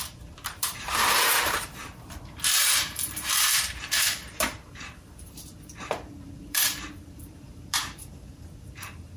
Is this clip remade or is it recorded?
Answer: remade